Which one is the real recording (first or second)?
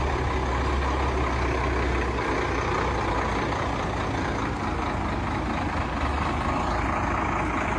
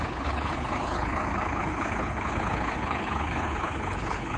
first